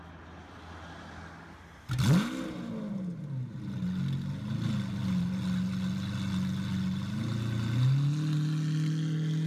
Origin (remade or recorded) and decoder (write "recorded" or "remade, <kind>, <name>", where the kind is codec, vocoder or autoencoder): recorded